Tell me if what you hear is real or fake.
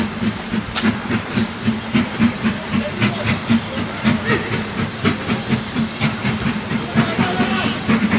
real